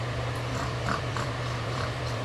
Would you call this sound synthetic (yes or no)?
yes